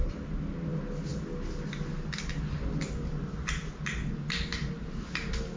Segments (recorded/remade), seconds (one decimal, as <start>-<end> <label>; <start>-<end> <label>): 0.0-5.6 recorded